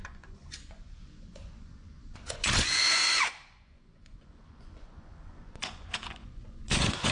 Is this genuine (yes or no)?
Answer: no